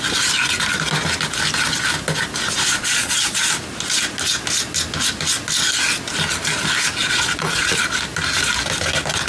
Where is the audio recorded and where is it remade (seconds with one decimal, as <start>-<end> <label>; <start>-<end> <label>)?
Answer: 0.0-2.7 recorded; 2.7-3.4 remade; 3.4-7.0 recorded; 7.0-7.8 remade; 7.8-9.3 recorded